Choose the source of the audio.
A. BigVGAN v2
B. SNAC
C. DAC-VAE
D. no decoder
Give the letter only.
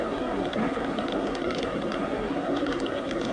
B